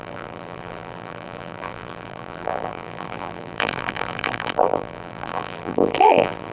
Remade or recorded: remade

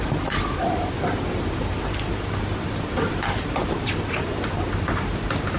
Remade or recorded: remade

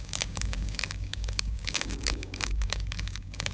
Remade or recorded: remade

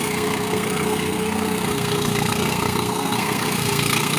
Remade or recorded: remade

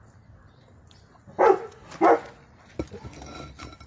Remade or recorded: recorded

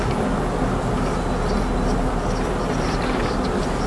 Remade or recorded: recorded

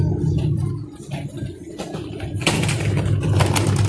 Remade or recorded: recorded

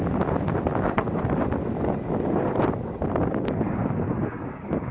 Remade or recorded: recorded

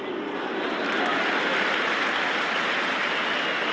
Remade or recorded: recorded